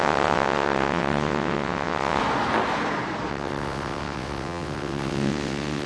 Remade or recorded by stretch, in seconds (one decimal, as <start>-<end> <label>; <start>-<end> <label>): 0.0-2.2 remade; 2.2-3.3 recorded; 3.3-5.9 remade